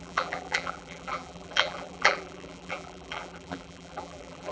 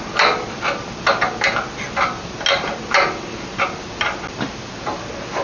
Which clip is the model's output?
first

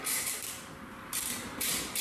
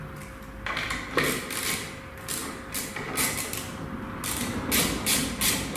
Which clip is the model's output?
first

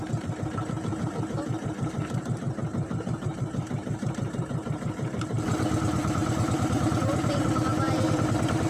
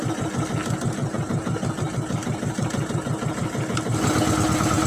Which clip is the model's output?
first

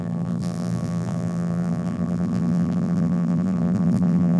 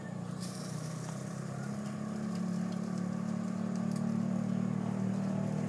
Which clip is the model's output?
first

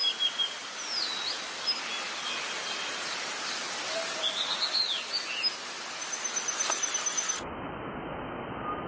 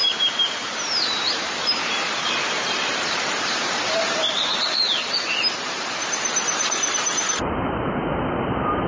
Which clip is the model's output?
second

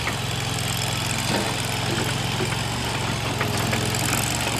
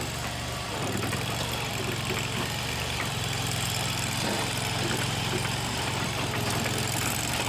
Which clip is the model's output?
second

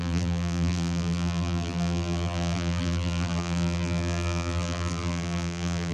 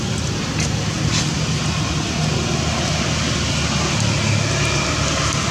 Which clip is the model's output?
first